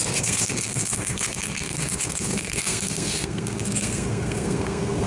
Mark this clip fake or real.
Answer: fake